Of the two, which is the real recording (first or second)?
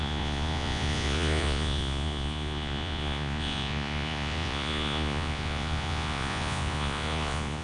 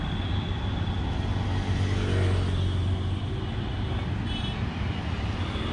second